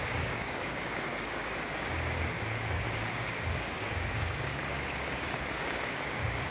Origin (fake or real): fake